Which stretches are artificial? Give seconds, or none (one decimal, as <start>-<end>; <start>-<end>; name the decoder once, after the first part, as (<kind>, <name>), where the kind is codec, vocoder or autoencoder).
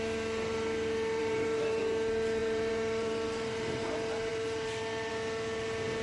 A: 1.2-1.8 (vocoder, BigVGAN v2); 2.4-3.8; 4.3-5.1